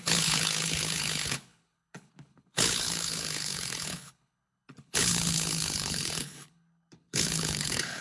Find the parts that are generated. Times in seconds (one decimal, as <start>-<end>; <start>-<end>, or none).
0.0-8.0